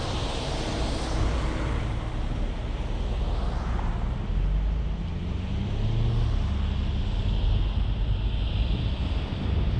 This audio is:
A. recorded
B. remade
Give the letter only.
A